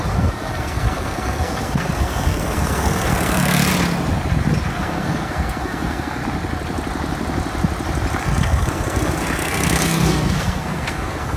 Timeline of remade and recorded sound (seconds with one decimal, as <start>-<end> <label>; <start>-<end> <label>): 0.0-3.7 remade; 3.7-4.7 recorded; 4.7-6.2 remade; 6.2-8.2 recorded; 8.2-11.4 remade